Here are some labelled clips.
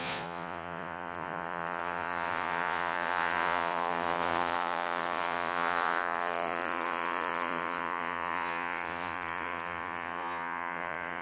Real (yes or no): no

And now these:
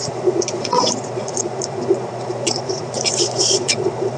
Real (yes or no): no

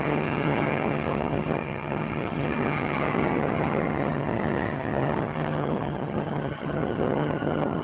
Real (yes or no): no